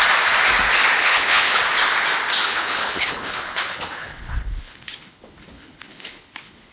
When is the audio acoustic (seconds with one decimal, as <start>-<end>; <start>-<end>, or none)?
0.0-1.0; 1.6-2.4